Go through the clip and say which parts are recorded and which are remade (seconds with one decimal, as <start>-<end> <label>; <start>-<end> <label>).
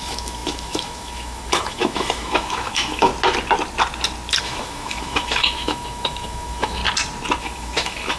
0.0-3.1 remade; 3.1-4.4 recorded; 4.4-6.8 remade; 6.8-7.4 recorded; 7.4-8.2 remade